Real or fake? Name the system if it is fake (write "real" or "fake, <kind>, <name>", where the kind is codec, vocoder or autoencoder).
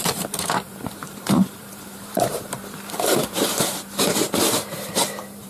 fake, vocoder, BigVGAN v2